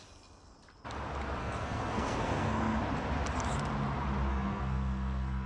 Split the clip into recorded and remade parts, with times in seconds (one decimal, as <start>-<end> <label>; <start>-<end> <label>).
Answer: 0.0-1.4 recorded; 1.4-2.8 remade; 2.8-4.3 recorded; 4.3-5.5 remade